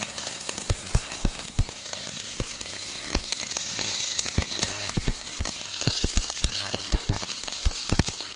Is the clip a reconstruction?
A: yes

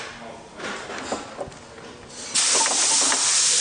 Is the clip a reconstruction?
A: no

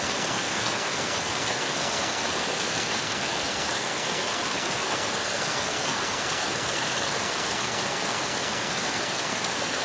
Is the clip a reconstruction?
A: yes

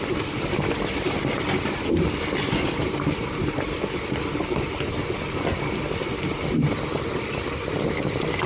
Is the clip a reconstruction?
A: no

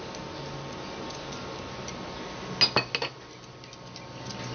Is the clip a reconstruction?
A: no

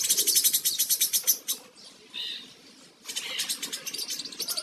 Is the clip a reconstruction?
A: no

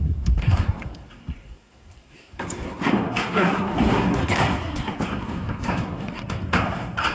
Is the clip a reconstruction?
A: yes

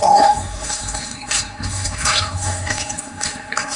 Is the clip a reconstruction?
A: yes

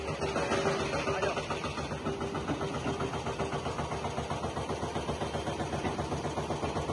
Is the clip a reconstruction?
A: no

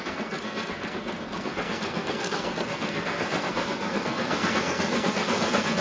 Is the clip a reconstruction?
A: yes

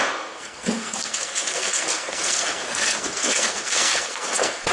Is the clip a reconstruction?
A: yes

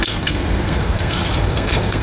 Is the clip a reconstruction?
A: yes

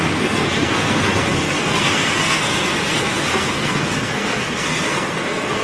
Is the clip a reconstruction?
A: yes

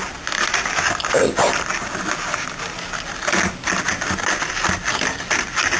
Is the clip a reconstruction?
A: no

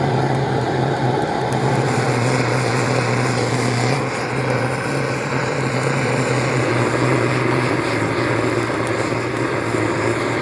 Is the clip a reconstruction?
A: no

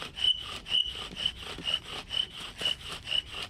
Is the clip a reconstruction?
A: no